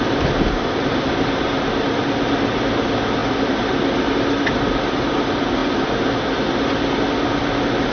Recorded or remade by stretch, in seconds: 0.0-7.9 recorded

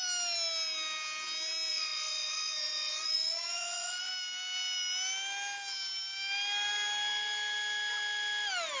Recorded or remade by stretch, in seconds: 0.0-1.7 recorded; 1.7-4.1 remade; 4.1-8.8 recorded

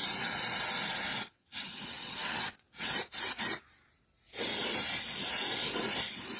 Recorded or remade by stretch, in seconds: 0.0-1.1 recorded; 1.1-2.9 remade; 2.9-6.4 recorded

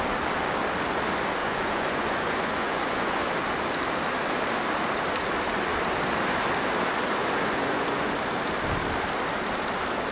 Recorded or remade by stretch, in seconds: 0.0-1.4 recorded; 1.4-3.3 remade; 3.3-7.2 recorded; 7.2-8.1 remade; 8.1-10.1 recorded